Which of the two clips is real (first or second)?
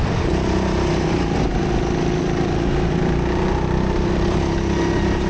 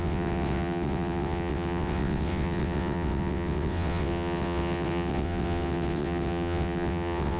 first